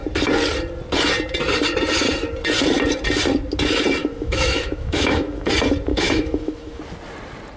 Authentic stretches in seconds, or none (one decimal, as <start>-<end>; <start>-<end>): 0.0-4.0; 5.5-5.9; 6.8-7.6